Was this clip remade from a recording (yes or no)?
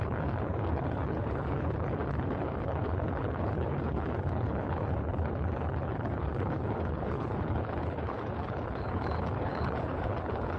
yes